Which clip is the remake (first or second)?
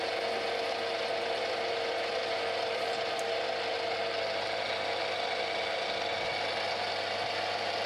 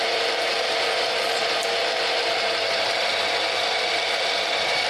second